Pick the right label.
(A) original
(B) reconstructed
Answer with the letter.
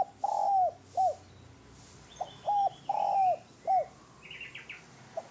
A